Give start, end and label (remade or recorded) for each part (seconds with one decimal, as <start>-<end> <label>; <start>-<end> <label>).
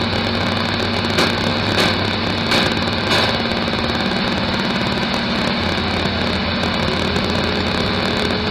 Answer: 0.0-8.5 recorded